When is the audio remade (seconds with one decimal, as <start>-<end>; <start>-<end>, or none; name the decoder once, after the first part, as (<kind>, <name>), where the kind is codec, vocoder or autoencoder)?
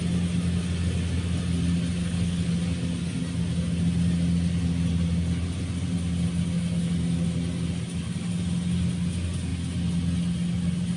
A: 2.0-2.5 (codec, HILCodec)